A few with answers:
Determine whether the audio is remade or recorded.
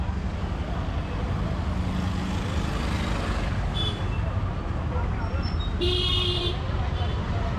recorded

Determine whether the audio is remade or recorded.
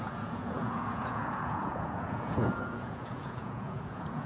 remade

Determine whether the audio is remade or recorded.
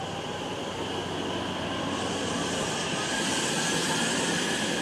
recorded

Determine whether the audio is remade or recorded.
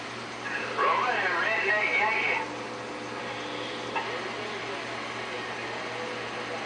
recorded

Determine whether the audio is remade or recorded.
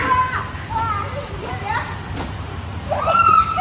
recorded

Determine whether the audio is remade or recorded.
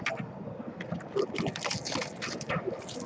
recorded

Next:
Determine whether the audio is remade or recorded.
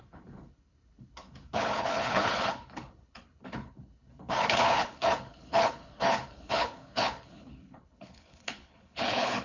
remade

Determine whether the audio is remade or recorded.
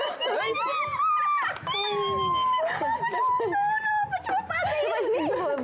recorded